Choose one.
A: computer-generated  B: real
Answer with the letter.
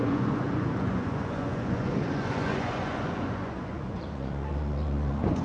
A